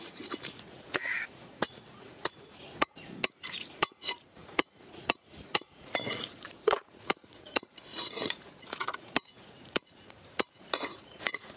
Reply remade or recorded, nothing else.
remade